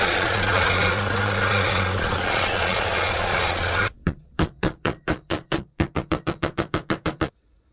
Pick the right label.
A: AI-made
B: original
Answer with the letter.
A